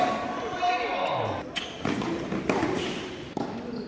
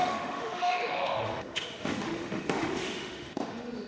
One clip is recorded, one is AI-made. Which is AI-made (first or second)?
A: second